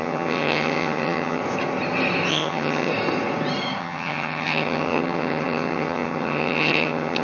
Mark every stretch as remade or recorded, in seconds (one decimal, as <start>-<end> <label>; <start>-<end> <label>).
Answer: 0.0-1.4 remade; 1.4-2.3 recorded; 2.3-2.9 remade; 2.9-3.8 recorded; 3.8-7.2 remade